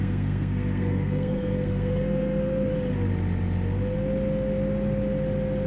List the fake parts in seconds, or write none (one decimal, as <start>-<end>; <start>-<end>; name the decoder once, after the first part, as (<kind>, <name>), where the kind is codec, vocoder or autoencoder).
0.0-2.7 (codec, SNAC)